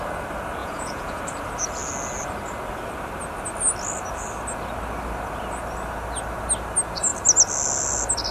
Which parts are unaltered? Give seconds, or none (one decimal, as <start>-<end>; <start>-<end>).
0.0-0.6; 1.2-8.3